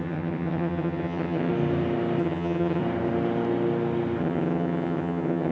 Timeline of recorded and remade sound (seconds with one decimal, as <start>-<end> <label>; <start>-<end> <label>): 0.0-1.5 remade; 1.5-2.2 recorded; 2.2-2.8 remade; 2.8-4.2 recorded; 4.2-5.5 remade